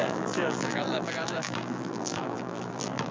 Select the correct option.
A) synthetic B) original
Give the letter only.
A